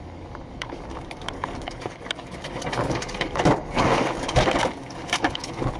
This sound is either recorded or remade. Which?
remade